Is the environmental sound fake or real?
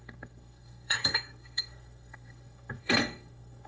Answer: fake